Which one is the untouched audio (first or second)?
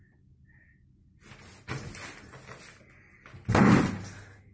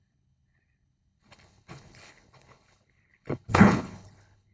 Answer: first